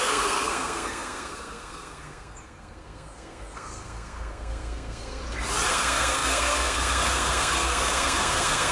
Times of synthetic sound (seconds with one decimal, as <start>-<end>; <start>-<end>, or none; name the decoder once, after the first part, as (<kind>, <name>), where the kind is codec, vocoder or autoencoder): 0.0-5.2 (codec, SNAC); 5.7-8.7